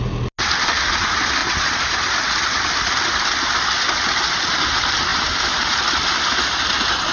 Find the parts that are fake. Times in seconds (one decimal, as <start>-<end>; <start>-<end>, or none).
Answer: 1.4-2.0; 5.1-5.7